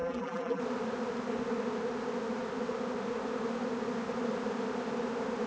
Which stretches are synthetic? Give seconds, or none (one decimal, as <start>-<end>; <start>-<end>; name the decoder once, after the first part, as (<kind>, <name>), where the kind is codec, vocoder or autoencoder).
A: 0.0-0.6 (vocoder, BigVGAN v2)